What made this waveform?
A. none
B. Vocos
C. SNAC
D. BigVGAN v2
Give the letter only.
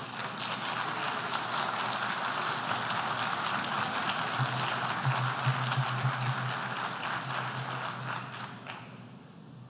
A